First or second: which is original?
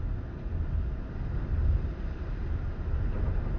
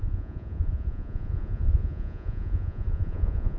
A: first